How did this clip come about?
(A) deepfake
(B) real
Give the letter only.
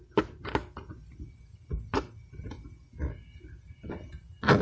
B